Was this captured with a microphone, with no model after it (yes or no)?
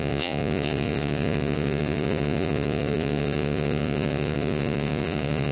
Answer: no